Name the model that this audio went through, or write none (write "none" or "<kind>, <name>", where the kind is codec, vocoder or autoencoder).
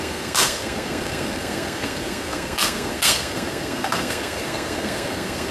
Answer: codec, SNAC